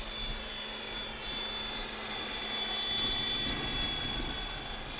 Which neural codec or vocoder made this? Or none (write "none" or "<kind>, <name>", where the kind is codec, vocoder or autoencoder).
none